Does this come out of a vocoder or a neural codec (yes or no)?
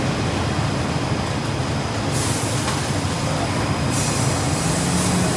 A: no